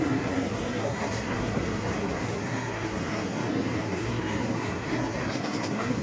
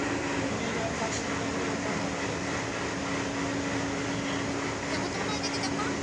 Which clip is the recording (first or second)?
second